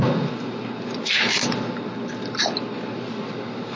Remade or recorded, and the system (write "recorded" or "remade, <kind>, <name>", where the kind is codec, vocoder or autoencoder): recorded